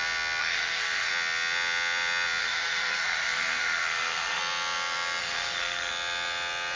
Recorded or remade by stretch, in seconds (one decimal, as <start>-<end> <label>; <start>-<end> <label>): 0.0-0.4 recorded; 0.4-1.1 remade; 1.1-2.4 recorded; 2.4-4.4 remade; 4.4-5.2 recorded; 5.2-5.9 remade; 5.9-6.8 recorded